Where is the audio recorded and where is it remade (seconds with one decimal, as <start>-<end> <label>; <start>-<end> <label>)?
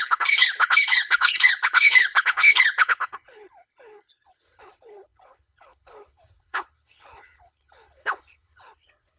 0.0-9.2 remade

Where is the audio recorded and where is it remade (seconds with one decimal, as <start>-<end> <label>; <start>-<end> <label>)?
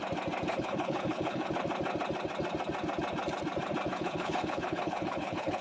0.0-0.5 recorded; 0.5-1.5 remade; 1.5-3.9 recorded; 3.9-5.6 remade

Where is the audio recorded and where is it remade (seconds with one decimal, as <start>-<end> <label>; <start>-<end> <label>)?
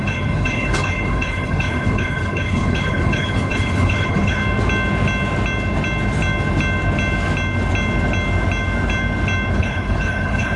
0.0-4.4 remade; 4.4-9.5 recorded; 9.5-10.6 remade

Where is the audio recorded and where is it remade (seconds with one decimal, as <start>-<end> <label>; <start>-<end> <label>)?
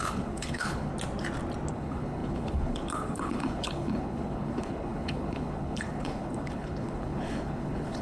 0.0-0.9 remade; 0.9-1.7 recorded; 1.7-8.0 remade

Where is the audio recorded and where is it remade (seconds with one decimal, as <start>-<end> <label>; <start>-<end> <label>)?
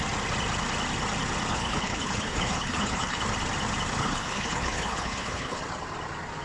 0.0-1.5 recorded; 1.5-3.2 remade; 3.2-4.0 recorded; 4.0-5.6 remade; 5.6-6.4 recorded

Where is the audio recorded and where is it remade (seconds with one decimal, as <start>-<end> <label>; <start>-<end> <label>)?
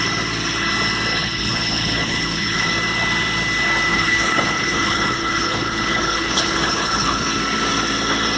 0.0-1.2 recorded; 1.2-2.7 remade; 2.7-3.9 recorded; 3.9-7.4 remade; 7.4-8.4 recorded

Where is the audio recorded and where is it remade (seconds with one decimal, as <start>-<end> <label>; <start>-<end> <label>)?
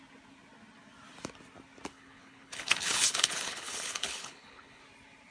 0.0-1.9 recorded; 1.9-4.8 remade; 4.8-5.3 recorded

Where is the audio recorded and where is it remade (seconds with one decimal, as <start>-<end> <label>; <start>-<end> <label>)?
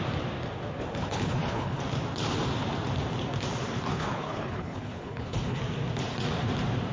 0.0-1.0 recorded; 1.0-1.8 remade; 1.8-3.9 recorded; 3.9-5.6 remade; 5.6-6.9 recorded